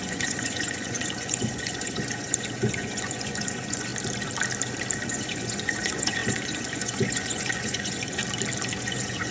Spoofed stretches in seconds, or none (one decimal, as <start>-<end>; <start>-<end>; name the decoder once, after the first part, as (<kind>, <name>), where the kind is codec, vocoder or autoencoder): 0.0-3.9 (vocoder, Vocos); 5.1-8.2; 8.8-9.3